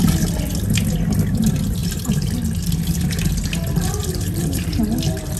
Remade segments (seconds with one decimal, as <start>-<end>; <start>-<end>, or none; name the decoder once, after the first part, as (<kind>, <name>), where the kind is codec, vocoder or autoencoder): 1.8-2.4 (vocoder, BigVGAN v2); 4.0-4.8